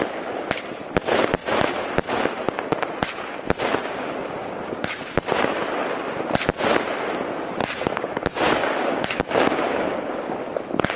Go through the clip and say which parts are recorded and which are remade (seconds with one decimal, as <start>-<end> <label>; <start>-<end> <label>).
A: 0.0-4.4 recorded; 4.4-5.0 remade; 5.0-7.6 recorded; 7.6-10.4 remade; 10.4-11.0 recorded